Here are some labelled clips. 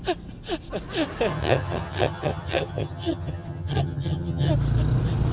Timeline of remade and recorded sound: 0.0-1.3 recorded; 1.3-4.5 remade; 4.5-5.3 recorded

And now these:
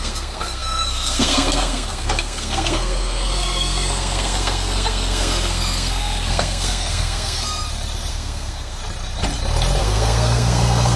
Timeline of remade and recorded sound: 0.0-7.6 remade; 7.6-8.1 recorded; 8.1-8.8 remade; 8.8-9.8 recorded; 9.8-11.0 remade

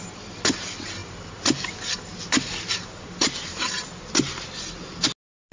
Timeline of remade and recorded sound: 0.0-5.5 recorded

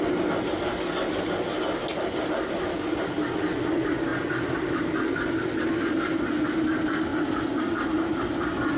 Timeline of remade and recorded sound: 0.0-1.8 recorded; 1.8-2.8 remade; 2.8-4.1 recorded; 4.1-5.3 remade; 5.3-7.1 recorded; 7.1-7.6 remade; 7.6-8.8 recorded

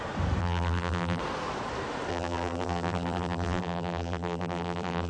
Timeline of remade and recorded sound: 0.0-0.4 recorded; 0.4-1.2 remade; 1.2-2.1 recorded; 2.1-5.1 remade

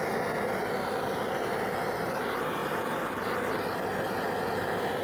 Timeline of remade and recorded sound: 0.0-5.0 recorded

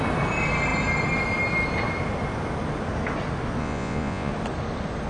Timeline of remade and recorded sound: 0.0-3.6 recorded; 3.6-4.3 remade; 4.3-5.1 recorded

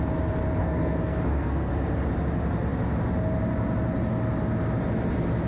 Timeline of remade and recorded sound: 0.0-0.6 recorded; 0.6-1.7 remade; 1.7-5.5 recorded